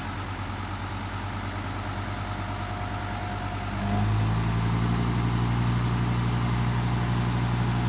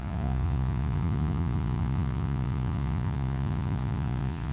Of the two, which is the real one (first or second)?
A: first